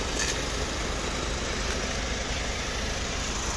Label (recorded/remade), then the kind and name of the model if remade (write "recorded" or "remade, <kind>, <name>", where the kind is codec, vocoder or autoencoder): recorded